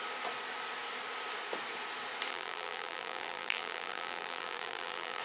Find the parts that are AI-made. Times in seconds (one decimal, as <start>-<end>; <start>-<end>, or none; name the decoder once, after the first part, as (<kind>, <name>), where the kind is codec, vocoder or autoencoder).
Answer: 2.3-5.2 (vocoder, BigVGAN v2)